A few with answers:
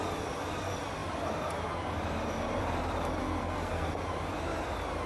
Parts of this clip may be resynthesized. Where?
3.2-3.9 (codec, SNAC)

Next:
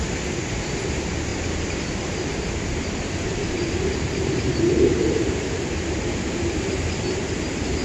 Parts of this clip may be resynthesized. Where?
1.3-6.0 (vocoder, BigVGAN v2)

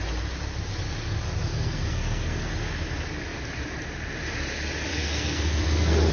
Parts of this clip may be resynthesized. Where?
1.5-2.5 (codec, SNAC); 4.9-6.1

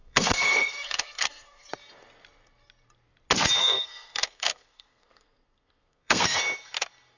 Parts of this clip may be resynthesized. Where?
0.0-1.7 (codec, SNAC); 3.6-6.4

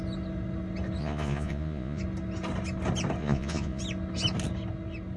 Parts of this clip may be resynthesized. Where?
1.0-2.0 (vocoder, Vocos); 3.2-3.8

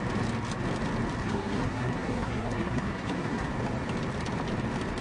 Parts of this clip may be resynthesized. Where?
1.2-3.5 (codec, SNAC)

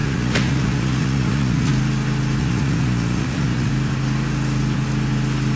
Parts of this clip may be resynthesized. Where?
0.0-1.7 (vocoder, Vocos); 2.4-3.7